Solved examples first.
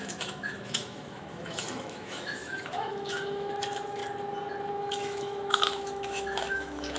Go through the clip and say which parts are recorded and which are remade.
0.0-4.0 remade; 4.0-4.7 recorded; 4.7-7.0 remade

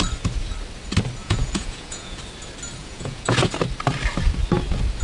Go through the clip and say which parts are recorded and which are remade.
0.0-1.2 recorded; 1.2-2.2 remade; 2.2-2.8 recorded; 2.8-3.5 remade; 3.5-5.0 recorded

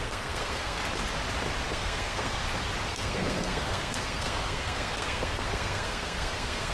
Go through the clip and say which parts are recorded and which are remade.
0.0-0.8 remade; 0.8-1.7 recorded; 1.7-2.4 remade; 2.4-2.9 recorded; 2.9-6.7 remade

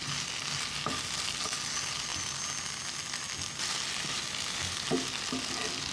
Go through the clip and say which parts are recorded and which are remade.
0.0-5.9 recorded

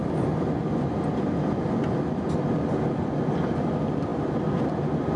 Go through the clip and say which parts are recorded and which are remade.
0.0-5.2 recorded

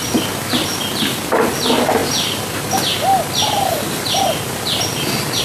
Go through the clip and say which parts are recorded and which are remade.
0.0-5.4 recorded